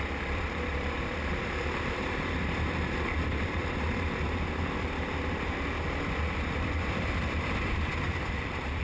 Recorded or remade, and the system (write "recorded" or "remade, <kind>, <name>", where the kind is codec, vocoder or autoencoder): remade, vocoder, BigVGAN v2